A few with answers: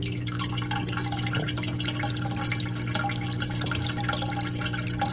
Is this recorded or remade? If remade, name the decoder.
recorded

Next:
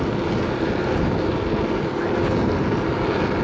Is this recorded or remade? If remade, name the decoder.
recorded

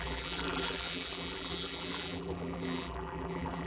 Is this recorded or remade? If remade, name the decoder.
remade, vocoder, BigVGAN v2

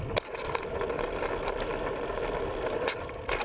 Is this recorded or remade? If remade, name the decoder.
recorded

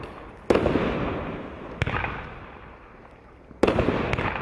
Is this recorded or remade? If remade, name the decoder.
recorded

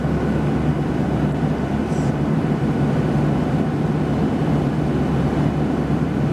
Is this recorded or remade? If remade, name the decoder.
recorded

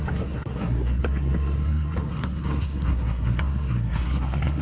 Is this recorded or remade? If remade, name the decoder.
remade, codec, SNAC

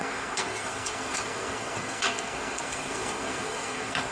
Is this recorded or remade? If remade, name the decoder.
remade, codec, SNAC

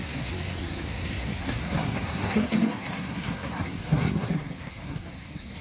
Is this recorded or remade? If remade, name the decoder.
remade, codec, SNAC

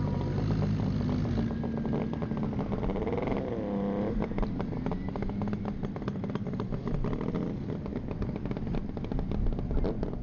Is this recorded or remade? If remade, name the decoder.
recorded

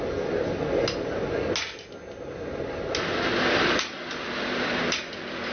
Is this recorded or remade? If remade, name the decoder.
recorded